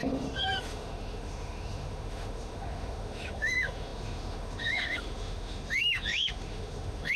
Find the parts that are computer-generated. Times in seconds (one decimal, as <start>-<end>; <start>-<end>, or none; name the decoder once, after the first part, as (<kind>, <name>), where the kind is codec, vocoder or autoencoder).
0.0-7.2 (autoencoder, DAC-VAE)